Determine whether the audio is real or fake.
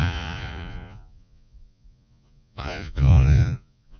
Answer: fake